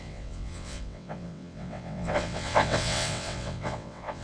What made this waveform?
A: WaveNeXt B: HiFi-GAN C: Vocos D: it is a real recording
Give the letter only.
A